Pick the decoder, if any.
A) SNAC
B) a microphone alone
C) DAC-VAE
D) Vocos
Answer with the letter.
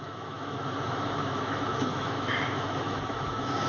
C